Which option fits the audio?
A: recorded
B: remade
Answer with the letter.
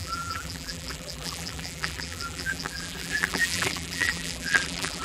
B